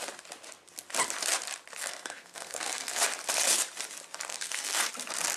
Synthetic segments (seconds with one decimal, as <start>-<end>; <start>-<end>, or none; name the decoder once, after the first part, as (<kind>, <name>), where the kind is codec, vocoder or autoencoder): 1.8-3.0 (codec, SNAC); 4.3-4.9